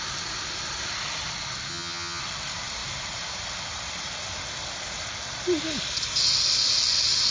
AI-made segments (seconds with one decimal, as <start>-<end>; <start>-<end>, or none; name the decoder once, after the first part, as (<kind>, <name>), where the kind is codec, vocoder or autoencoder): 1.7-2.2 (vocoder, HiFi-GAN)